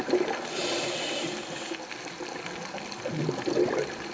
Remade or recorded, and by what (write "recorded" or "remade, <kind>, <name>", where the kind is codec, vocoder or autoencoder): recorded